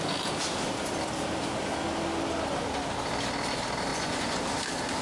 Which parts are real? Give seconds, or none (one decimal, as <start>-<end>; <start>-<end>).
0.0-3.9; 4.4-5.0